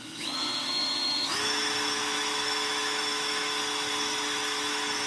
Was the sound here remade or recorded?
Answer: remade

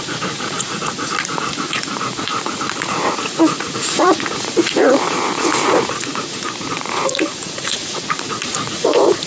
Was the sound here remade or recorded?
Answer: remade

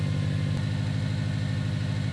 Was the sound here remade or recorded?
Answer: recorded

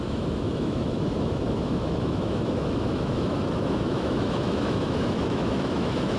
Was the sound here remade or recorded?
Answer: remade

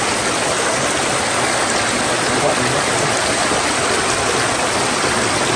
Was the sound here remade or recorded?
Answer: recorded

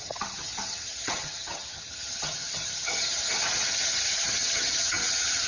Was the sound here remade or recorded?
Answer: remade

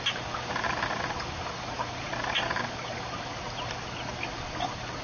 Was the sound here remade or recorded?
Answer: recorded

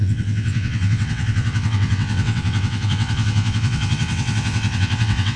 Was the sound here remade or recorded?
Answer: remade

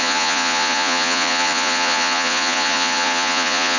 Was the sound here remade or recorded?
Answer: remade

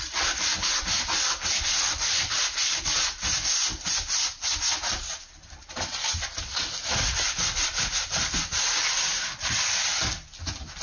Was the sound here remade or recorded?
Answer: remade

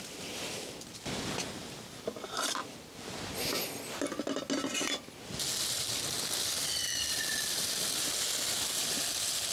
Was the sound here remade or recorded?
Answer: recorded